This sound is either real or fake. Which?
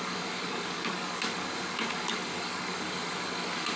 fake